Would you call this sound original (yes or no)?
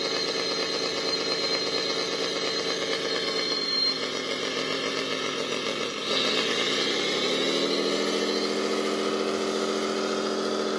yes